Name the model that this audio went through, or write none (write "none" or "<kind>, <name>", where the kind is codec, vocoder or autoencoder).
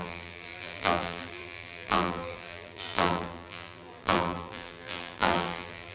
vocoder, BigVGAN v2